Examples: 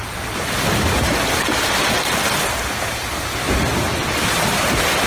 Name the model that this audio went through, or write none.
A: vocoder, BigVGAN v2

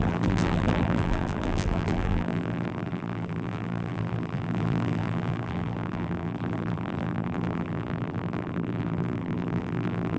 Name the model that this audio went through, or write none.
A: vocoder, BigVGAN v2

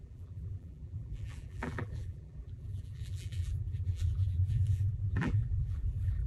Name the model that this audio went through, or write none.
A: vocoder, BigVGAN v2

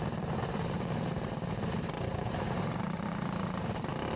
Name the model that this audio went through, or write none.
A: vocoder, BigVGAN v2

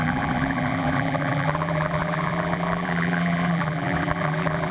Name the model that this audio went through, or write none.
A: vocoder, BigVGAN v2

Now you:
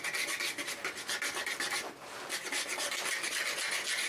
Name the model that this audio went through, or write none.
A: none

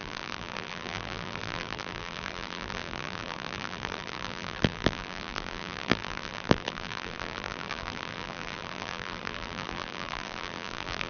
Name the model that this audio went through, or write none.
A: vocoder, BigVGAN v2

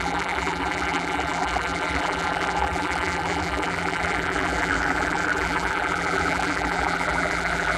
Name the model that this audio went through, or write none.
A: vocoder, BigVGAN v2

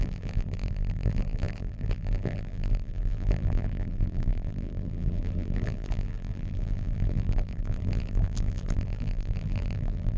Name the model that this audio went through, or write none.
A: vocoder, BigVGAN v2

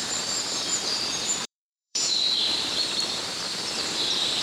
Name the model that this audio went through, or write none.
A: vocoder, BigVGAN v2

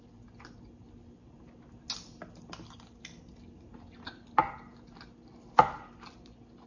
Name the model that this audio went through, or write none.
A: none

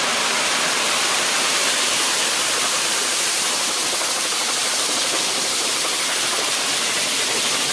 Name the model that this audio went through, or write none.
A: vocoder, BigVGAN v2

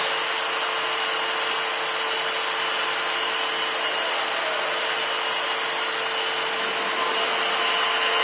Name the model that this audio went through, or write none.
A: none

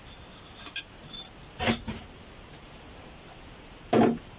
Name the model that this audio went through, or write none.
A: none